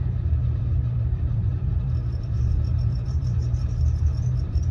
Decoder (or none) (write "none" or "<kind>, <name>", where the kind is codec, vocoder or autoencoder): vocoder, BigVGAN v2